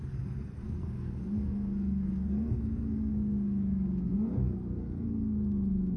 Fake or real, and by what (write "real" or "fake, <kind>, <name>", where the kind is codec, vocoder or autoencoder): fake, codec, SNAC